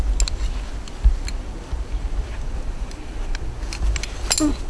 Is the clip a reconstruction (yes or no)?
no